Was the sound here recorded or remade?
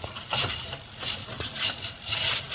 recorded